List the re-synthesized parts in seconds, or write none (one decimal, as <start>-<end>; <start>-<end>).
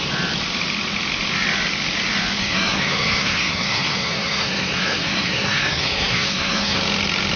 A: 2.4-6.8